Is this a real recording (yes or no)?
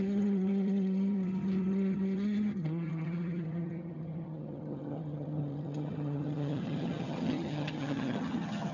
no